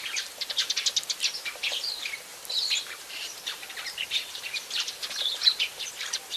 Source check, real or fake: fake